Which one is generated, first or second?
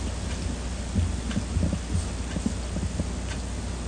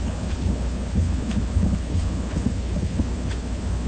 second